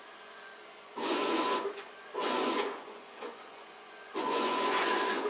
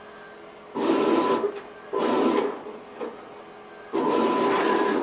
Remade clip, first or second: first